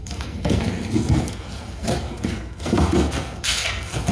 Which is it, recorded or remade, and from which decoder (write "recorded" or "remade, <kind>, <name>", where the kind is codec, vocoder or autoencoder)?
remade, codec, SNAC